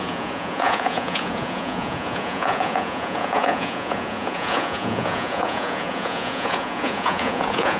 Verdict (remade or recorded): remade